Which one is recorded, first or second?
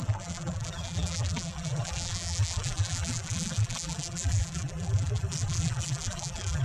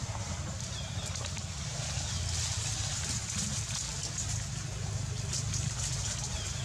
second